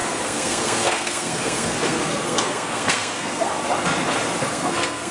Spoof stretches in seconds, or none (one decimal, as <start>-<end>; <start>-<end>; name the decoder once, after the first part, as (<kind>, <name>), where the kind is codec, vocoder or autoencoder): 0.0-3.5 (codec, SNAC); 4.4-5.1